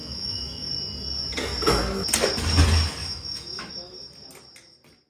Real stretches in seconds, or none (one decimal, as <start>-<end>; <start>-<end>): 0.7-3.0; 3.7-5.1